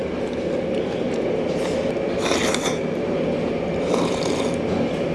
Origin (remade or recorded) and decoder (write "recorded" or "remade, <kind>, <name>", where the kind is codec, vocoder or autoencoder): recorded